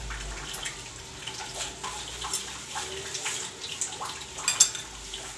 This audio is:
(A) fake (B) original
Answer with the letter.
B